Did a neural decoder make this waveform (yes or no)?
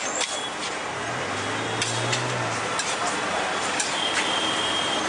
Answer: no